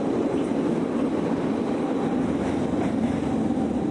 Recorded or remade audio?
remade